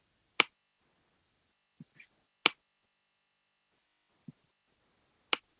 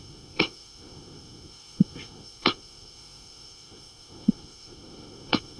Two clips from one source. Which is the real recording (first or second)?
first